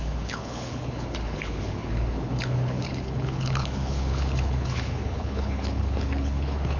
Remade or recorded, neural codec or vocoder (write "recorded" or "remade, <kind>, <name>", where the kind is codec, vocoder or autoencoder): remade, codec, HILCodec